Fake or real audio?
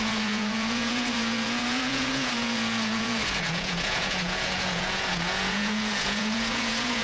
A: fake